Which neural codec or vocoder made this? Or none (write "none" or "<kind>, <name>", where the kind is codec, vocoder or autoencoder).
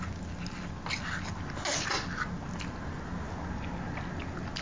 none